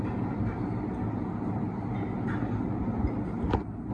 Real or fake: real